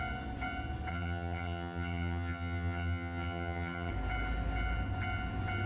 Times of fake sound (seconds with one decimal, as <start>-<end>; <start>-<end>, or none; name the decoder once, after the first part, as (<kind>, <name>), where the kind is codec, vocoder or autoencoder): 0.9-3.9 (vocoder, HiFi-GAN)